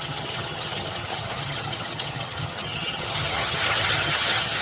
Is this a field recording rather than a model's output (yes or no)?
no